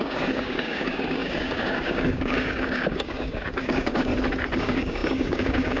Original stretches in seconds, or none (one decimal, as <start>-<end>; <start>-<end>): 4.1-4.6

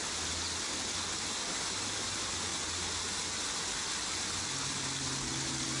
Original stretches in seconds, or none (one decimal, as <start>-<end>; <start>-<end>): 0.0-5.8

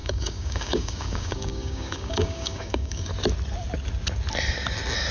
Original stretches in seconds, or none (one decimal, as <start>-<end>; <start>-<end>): 3.1-5.1

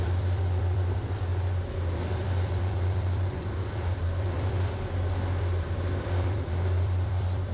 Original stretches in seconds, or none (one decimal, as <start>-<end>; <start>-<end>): 1.3-2.0

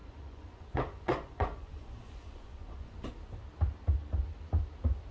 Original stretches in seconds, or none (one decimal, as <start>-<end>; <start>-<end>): 3.1-5.1

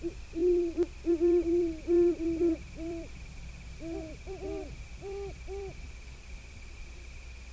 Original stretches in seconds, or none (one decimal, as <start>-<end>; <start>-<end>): none

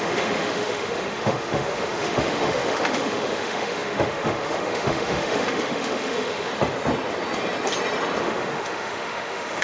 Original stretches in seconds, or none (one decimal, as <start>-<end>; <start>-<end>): 6.5-8.2